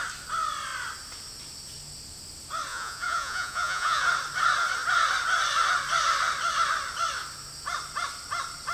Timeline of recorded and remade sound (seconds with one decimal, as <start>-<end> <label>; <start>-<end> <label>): 0.0-2.7 recorded; 2.7-4.0 remade; 4.0-8.7 recorded